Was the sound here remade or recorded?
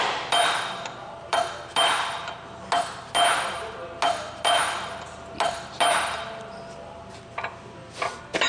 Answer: recorded